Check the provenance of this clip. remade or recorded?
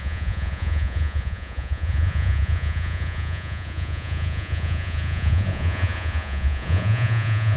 remade